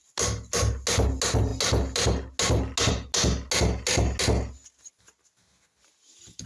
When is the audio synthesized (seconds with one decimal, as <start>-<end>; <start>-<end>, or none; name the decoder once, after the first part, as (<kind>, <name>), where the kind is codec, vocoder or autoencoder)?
none